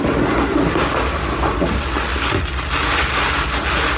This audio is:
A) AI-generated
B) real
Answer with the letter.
B